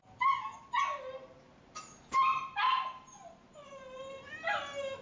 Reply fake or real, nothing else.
real